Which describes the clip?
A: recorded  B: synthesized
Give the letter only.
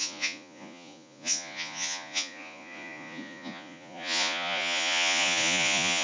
B